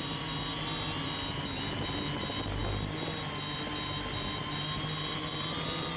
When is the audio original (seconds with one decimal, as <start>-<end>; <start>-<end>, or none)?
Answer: 0.0-6.0